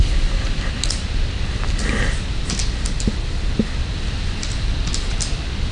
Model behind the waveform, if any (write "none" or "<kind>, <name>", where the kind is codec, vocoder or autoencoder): none